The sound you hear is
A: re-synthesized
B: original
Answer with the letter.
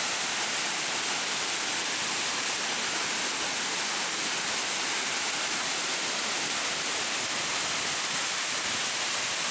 B